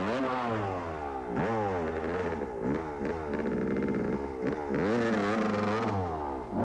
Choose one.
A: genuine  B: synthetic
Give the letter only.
A